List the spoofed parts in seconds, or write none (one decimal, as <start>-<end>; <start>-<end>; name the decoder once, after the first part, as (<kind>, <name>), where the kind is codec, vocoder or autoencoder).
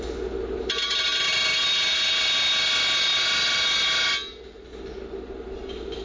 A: none